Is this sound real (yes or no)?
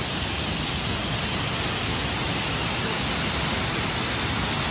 yes